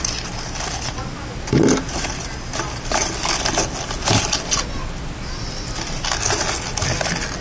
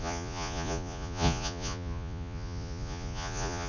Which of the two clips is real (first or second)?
first